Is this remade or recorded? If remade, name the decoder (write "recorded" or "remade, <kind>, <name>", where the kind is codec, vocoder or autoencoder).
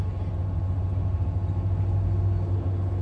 recorded